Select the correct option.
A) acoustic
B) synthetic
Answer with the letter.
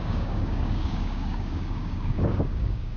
B